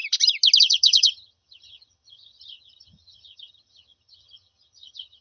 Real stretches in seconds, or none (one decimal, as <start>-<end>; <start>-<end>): 0.0-0.6